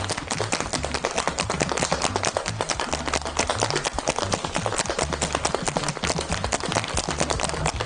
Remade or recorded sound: recorded